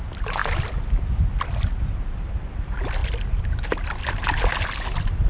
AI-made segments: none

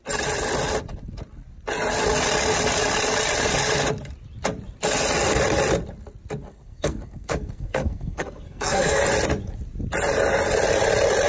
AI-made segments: 6.5-9.0

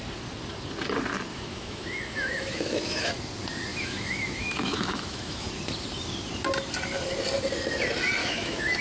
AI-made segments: 1.3-3.1; 3.7-5.5; 8.2-8.8

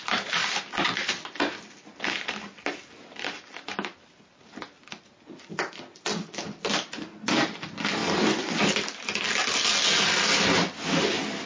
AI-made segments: none

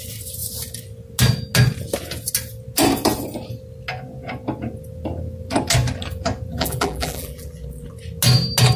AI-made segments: 6.5-7.9